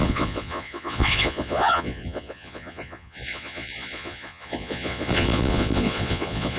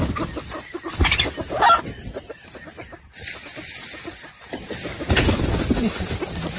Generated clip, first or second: first